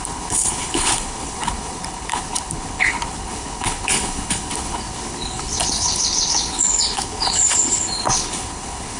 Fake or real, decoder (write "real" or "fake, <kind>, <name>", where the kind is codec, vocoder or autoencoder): fake, codec, HILCodec